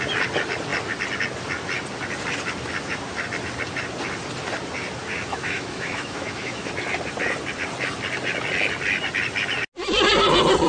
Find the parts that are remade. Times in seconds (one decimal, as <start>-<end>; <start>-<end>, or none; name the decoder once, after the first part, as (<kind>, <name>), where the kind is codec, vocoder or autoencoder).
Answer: 5.3-6.7 (autoencoder, DAC-VAE)